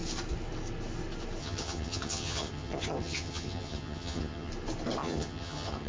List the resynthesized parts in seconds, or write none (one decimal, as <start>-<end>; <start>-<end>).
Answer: 1.4-4.5; 5.0-5.9